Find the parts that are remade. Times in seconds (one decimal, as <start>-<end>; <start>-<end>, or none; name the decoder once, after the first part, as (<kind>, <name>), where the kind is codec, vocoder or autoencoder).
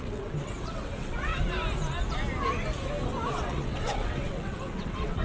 0.0-1.3 (vocoder, WaveNeXt); 3.3-5.2